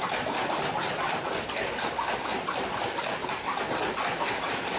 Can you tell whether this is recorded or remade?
recorded